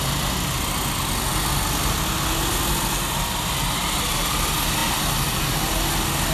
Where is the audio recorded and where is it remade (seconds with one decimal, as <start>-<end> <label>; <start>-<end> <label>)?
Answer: 0.0-6.3 recorded